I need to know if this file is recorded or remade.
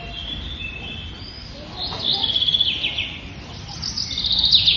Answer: recorded